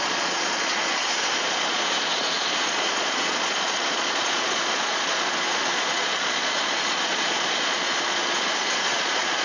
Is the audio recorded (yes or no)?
no